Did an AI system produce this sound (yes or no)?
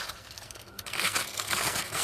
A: yes